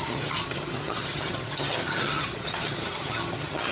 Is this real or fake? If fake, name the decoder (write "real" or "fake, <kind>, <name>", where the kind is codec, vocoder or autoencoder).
fake, vocoder, HiFi-GAN